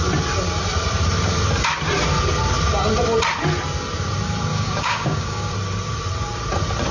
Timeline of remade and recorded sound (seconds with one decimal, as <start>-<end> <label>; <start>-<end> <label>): 0.0-4.5 recorded; 4.5-5.5 remade; 5.5-6.9 recorded